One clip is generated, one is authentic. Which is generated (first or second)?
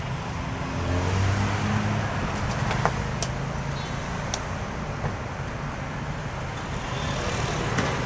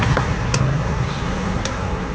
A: second